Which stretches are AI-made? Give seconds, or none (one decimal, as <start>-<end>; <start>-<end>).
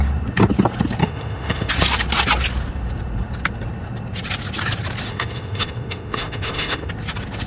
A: 1.0-1.7; 5.1-6.9